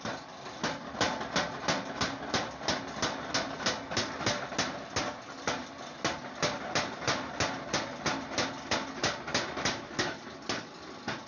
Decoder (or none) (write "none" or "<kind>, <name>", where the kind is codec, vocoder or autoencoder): none